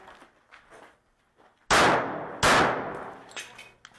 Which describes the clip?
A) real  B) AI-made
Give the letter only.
A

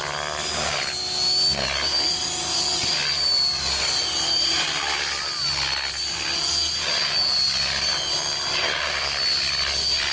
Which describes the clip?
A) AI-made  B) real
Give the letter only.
B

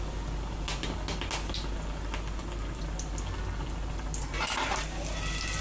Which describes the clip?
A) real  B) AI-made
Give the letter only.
A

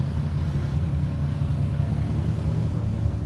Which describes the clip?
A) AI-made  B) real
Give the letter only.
A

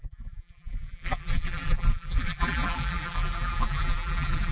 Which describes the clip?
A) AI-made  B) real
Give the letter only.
A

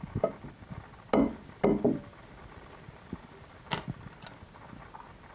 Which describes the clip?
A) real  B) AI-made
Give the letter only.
A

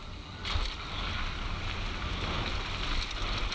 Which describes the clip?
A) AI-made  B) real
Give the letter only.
B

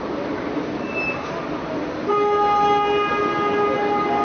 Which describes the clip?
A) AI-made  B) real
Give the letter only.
B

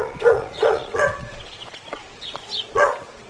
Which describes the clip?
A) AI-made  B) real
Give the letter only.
A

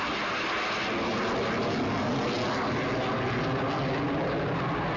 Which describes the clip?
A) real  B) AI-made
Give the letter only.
A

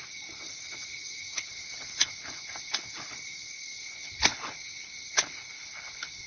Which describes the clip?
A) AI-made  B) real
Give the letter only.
A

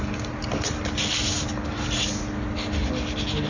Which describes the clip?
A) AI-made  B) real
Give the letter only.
B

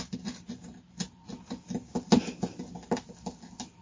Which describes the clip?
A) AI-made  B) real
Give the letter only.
B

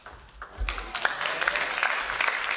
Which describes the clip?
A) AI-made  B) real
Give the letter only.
B